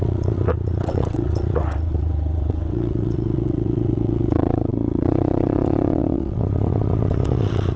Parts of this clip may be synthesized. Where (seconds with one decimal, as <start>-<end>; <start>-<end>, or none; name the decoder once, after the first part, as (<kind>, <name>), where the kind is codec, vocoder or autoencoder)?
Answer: 0.0-7.8 (vocoder, WaveNeXt)